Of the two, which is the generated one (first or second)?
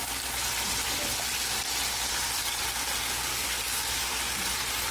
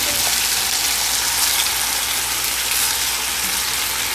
first